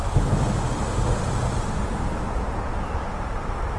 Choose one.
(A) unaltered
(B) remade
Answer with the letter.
A